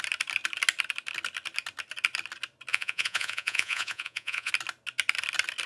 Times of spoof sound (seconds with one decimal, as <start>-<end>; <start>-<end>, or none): 2.7-4.5